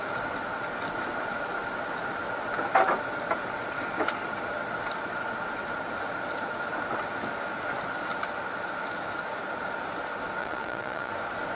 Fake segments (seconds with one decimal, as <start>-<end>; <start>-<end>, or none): 10.4-11.1